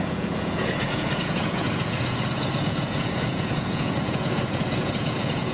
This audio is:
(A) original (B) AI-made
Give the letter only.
B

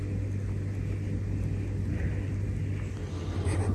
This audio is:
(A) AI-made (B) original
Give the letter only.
B